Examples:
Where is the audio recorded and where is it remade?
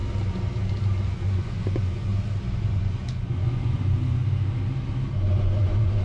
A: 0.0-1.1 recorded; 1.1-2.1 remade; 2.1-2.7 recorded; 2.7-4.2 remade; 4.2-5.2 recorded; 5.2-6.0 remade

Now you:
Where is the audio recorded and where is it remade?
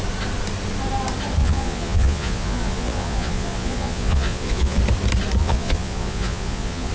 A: 0.0-1.4 recorded; 1.4-4.8 remade; 4.8-5.4 recorded; 5.4-6.9 remade